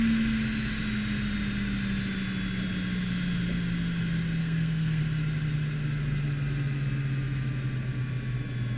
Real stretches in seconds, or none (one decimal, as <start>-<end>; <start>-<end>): 0.0-4.4; 5.0-8.8